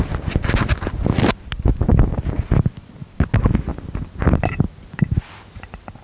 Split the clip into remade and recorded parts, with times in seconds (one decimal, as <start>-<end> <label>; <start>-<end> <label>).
0.0-6.0 recorded